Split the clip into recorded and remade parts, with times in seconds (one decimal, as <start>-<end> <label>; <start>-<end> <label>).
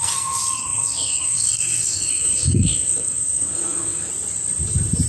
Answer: 0.0-4.1 remade; 4.1-5.1 recorded